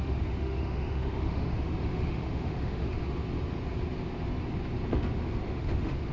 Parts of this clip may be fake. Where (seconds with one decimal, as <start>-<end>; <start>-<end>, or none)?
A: 0.0-3.0; 4.9-6.1